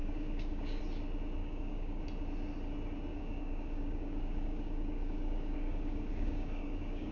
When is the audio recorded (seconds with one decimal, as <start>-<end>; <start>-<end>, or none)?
0.8-1.4; 2.0-3.1